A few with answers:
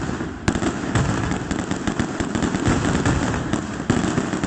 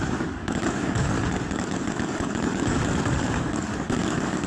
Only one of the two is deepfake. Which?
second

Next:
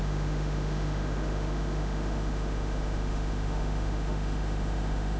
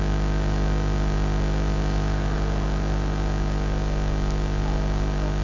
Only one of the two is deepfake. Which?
first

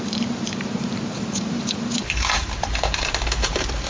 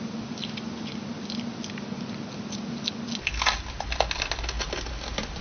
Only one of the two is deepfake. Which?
first